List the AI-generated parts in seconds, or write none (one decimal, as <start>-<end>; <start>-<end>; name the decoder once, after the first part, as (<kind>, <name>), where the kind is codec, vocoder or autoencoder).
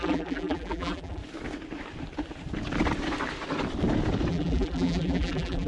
0.0-1.2 (vocoder, BigVGAN v2); 4.3-5.7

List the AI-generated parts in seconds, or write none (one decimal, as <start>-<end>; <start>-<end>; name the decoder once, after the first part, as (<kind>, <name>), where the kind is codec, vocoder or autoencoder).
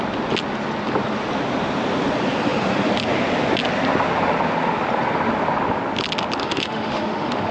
6.4-7.5 (autoencoder, DAC-VAE)